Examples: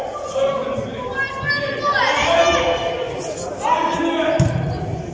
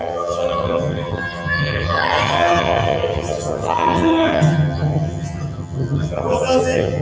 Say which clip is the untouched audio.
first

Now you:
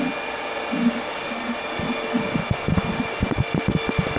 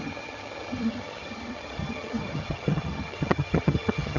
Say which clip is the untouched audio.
first